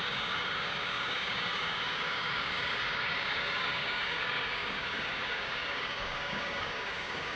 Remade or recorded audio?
remade